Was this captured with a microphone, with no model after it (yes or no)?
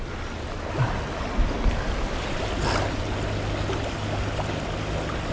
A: yes